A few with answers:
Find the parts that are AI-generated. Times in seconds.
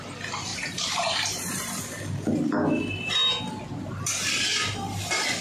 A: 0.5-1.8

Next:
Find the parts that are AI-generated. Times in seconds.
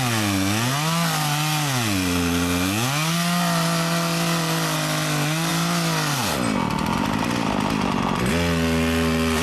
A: none